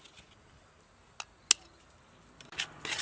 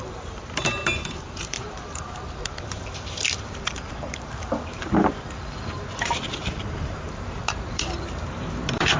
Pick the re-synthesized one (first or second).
second